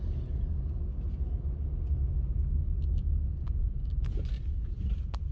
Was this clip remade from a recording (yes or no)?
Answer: no